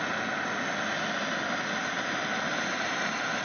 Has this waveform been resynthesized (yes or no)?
yes